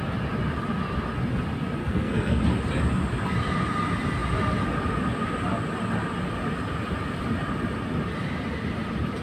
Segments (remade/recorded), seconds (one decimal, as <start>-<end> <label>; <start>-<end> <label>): 0.0-1.8 recorded; 1.8-2.4 remade; 2.4-9.2 recorded